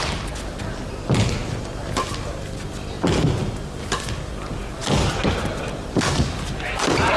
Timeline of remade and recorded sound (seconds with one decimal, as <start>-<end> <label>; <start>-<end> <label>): 0.0-7.2 recorded